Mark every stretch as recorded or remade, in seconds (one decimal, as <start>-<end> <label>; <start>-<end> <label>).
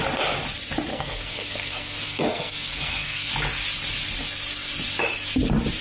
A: 0.0-0.9 recorded; 0.9-3.3 remade; 3.3-5.8 recorded